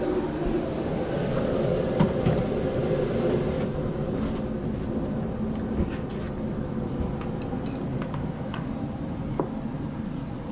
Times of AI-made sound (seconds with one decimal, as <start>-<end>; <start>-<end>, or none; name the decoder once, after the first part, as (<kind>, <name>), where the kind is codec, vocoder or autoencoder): 1.3-1.9 (codec, DAC); 7.9-8.7